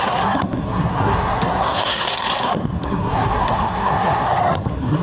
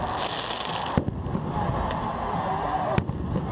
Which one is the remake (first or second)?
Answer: first